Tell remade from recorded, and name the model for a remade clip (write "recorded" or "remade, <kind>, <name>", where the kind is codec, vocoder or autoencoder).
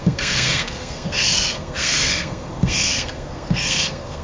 remade, codec, SNAC